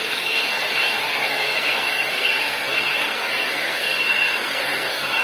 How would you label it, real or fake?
fake